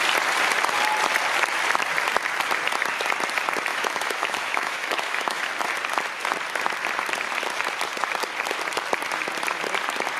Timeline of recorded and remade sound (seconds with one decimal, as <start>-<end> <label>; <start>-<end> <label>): 0.0-3.7 recorded; 3.7-5.5 remade; 5.5-10.2 recorded